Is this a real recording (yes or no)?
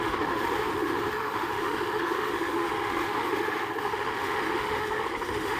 no